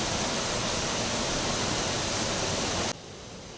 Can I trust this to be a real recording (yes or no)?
yes